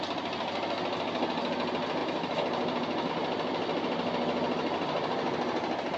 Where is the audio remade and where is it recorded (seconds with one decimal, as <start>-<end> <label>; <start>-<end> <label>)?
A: 0.0-6.0 recorded